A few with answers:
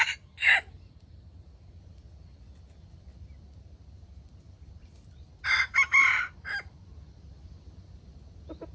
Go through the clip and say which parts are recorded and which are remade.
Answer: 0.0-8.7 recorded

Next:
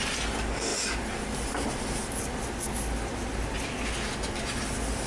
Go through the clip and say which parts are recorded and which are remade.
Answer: 0.0-5.1 recorded

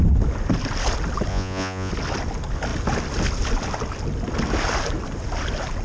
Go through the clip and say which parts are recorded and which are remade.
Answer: 0.0-1.3 recorded; 1.3-1.9 remade; 1.9-5.8 recorded